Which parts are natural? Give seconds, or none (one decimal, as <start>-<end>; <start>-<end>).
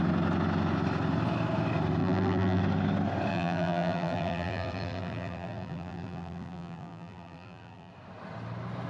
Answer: 0.0-2.0; 2.6-3.3; 7.9-8.9